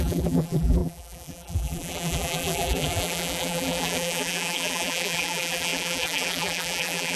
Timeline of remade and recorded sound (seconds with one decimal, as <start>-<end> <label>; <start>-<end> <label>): 0.0-7.2 remade